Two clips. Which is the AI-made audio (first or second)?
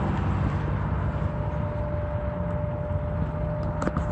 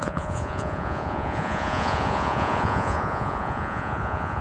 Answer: second